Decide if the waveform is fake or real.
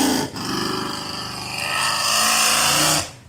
real